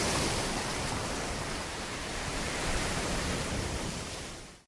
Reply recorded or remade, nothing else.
remade